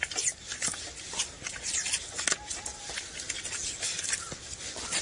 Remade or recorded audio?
recorded